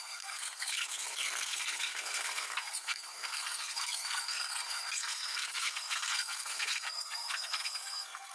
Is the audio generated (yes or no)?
yes